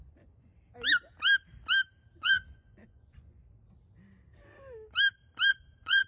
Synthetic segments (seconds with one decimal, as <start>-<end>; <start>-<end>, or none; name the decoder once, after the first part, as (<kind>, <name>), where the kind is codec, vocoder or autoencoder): 0.0-0.5 (vocoder, Vocos); 2.2-3.4; 5.5-6.1